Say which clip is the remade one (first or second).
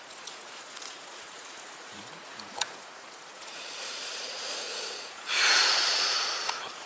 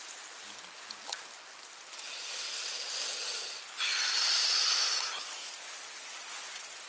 first